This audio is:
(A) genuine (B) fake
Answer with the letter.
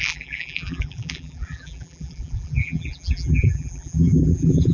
B